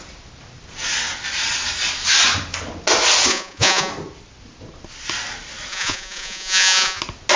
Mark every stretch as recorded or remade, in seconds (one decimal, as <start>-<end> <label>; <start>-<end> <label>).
0.0-3.3 recorded; 3.3-3.9 remade; 3.9-5.7 recorded; 5.7-7.0 remade; 7.0-7.4 recorded